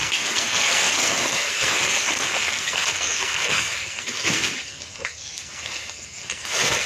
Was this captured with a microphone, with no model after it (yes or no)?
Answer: no